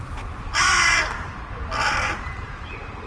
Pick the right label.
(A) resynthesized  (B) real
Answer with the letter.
B